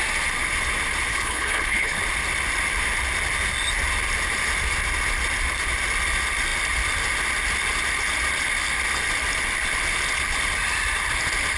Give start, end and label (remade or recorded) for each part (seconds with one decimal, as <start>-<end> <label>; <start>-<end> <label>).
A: 0.0-1.1 recorded; 1.1-2.0 remade; 2.0-11.6 recorded